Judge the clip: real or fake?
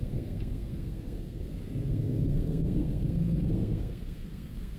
fake